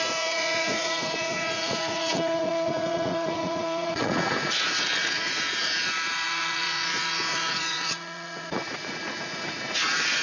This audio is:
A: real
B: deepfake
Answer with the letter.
B